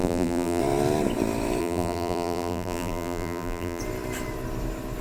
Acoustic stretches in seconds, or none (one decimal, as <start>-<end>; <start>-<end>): 0.6-1.6; 3.8-5.0